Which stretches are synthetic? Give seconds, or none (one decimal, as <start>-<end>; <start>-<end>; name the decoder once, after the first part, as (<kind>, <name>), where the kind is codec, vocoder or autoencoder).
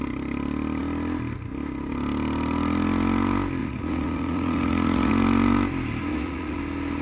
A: 3.6-5.1 (vocoder, Vocos); 6.1-6.6